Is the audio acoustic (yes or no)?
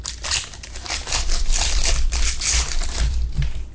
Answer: yes